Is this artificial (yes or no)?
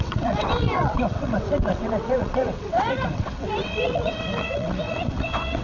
yes